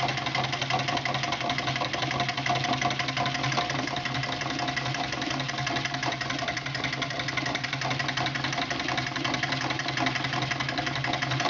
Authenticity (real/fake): real